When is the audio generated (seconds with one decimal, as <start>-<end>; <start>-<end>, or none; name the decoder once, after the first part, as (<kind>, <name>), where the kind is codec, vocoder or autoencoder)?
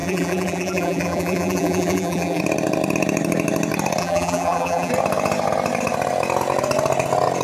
0.0-2.4 (vocoder, BigVGAN v2); 4.0-4.9